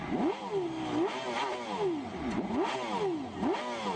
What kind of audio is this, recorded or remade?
recorded